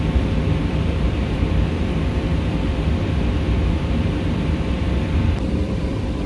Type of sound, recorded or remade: remade